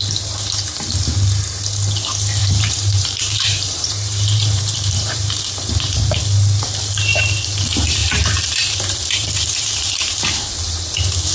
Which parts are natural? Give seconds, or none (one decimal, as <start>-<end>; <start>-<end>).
0.0-2.4; 6.2-8.0; 10.2-11.3